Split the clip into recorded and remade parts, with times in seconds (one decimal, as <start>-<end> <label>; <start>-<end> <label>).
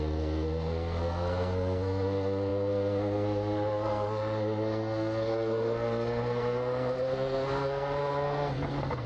0.0-9.1 remade